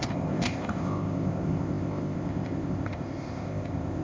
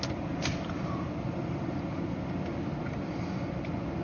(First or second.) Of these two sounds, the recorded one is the second